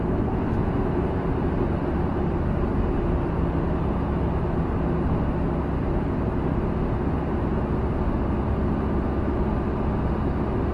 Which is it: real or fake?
real